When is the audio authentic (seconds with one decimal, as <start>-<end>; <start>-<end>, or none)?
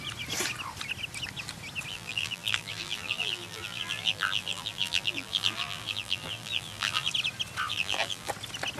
0.0-1.9; 7.1-7.7; 8.3-8.8